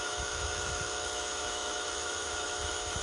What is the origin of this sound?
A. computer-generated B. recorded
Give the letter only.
A